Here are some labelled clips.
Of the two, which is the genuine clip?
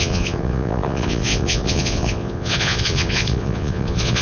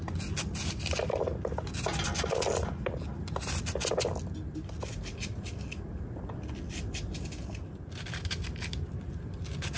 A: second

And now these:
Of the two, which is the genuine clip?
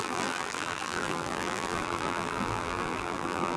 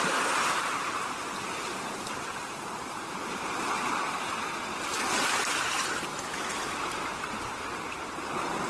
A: second